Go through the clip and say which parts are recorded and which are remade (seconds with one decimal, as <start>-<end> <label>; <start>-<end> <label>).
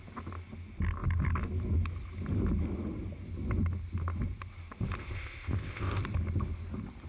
0.0-5.0 recorded; 5.0-6.0 remade; 6.0-7.1 recorded